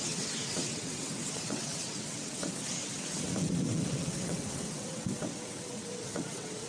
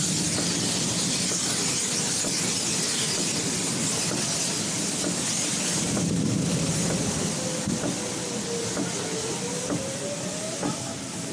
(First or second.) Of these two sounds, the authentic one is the second